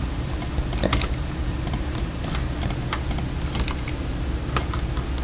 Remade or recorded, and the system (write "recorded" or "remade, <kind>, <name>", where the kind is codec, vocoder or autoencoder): remade, vocoder, BigVGAN v2